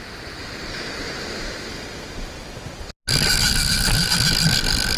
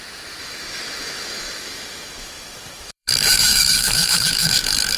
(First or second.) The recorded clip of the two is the first